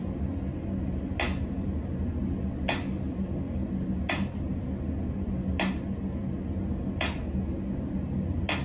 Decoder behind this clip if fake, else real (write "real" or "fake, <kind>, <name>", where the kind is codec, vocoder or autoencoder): real